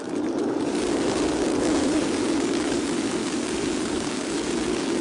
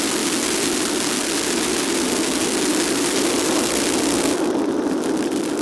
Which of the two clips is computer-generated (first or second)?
first